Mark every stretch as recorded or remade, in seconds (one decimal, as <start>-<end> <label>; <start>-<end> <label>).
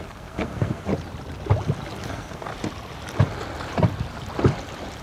0.0-0.9 remade; 0.9-2.1 recorded; 2.1-2.5 remade; 2.5-5.0 recorded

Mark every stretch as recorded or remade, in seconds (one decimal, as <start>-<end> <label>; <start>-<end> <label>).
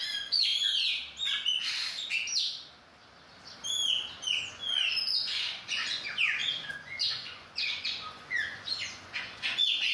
0.0-0.5 remade; 0.5-4.5 recorded; 4.5-9.9 remade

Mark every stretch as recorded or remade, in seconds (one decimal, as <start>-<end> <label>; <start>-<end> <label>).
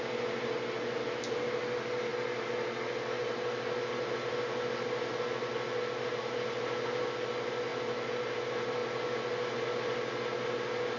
0.0-11.0 recorded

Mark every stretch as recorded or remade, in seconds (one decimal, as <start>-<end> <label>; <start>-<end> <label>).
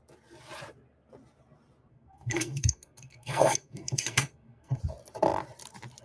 0.0-1.9 recorded; 1.9-4.8 remade; 4.8-6.0 recorded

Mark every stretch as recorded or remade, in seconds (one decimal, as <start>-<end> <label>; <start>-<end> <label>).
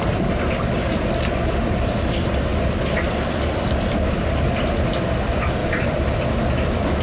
0.0-7.0 remade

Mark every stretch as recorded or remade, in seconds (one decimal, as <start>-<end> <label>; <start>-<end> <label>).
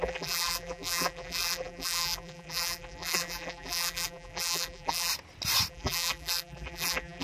0.0-5.1 remade; 5.1-5.7 recorded; 5.7-7.2 remade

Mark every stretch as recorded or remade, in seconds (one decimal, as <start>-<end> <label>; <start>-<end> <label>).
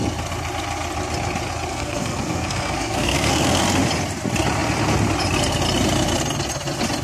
0.0-1.7 recorded; 1.7-3.6 remade; 3.6-7.0 recorded